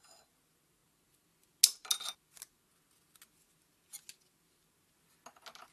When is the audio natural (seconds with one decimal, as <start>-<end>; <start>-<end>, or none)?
0.0-5.7

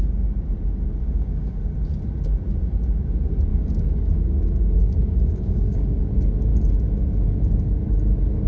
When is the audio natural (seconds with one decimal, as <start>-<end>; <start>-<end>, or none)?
0.0-1.0; 1.6-3.5; 6.0-8.5

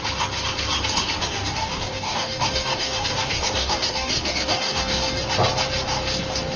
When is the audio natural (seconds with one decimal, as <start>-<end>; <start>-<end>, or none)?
0.0-1.2; 5.2-6.6